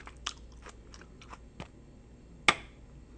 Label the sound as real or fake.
real